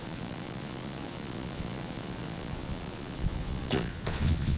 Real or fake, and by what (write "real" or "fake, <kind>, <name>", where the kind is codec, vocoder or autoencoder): fake, vocoder, Vocos